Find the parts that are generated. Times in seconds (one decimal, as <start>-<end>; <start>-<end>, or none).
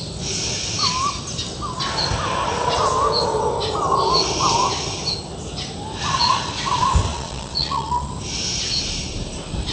7.1-8.1